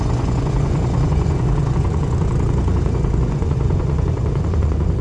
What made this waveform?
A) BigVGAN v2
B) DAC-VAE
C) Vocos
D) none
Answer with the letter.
C